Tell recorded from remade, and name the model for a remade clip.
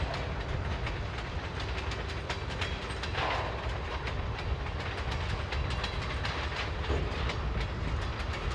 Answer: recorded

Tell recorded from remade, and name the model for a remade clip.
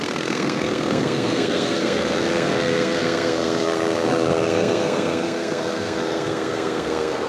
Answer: remade, codec, SNAC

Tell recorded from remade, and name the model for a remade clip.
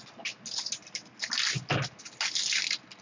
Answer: recorded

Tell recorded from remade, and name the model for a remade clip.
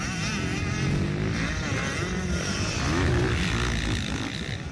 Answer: recorded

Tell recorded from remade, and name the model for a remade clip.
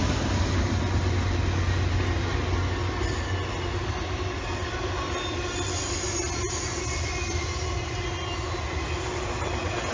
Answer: recorded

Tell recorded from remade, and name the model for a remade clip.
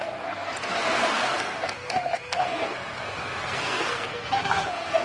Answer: remade, codec, SNAC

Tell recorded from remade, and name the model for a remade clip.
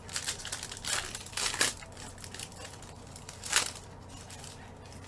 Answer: recorded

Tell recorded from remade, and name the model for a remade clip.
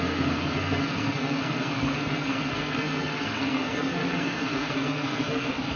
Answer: remade, codec, SNAC